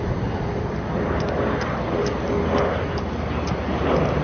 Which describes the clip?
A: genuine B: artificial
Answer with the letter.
A